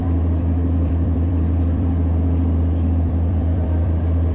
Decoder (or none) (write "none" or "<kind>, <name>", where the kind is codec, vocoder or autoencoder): vocoder, BigVGAN v2